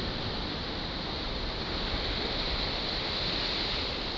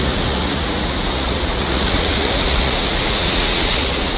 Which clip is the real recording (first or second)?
first